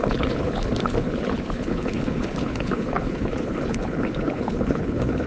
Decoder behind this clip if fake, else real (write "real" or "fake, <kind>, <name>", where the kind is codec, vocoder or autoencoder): fake, codec, HILCodec